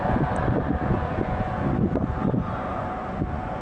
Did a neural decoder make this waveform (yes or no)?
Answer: yes